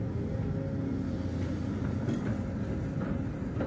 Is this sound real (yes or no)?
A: yes